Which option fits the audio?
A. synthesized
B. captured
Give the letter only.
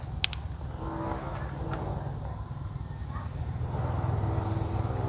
B